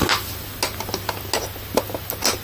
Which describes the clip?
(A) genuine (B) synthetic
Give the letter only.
A